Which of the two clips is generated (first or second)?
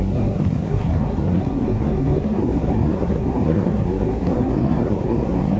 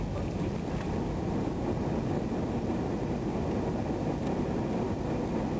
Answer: first